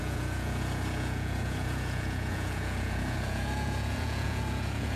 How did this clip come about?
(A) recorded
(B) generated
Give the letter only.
B